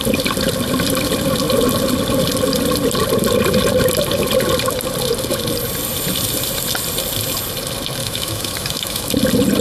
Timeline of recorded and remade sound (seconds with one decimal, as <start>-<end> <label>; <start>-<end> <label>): 0.0-8.0 recorded; 8.0-9.1 remade; 9.1-9.6 recorded